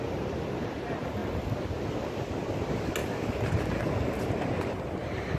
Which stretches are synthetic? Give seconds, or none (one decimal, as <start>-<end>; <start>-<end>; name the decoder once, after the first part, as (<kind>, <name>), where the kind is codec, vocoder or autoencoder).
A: none

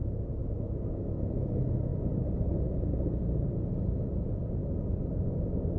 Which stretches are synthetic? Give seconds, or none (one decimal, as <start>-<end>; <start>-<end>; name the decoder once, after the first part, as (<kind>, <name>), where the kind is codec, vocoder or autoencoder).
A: 0.4-1.3 (autoencoder, DAC-VAE)

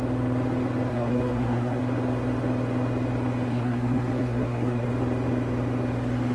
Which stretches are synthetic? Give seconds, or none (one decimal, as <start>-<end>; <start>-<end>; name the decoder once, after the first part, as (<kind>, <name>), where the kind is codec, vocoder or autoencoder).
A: 0.9-1.8 (codec, SNAC); 3.5-4.9

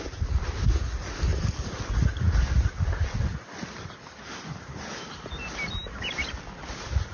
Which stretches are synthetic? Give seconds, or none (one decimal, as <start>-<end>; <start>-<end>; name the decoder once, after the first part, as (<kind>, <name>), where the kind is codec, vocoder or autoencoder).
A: none